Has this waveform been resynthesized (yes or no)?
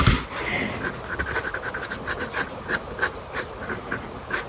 no